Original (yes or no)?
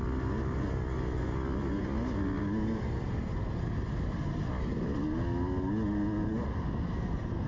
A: yes